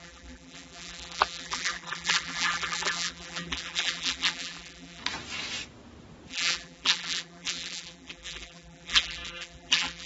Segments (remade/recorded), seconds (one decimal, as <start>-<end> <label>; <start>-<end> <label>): 0.0-5.0 remade; 5.0-6.3 recorded; 6.3-10.1 remade